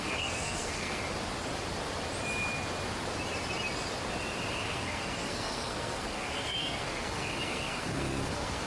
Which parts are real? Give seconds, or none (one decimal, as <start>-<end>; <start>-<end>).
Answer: 1.0-4.5